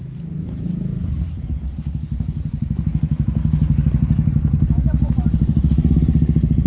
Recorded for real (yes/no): no